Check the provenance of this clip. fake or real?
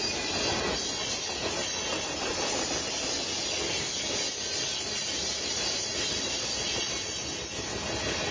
real